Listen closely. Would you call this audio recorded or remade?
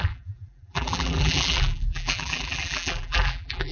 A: remade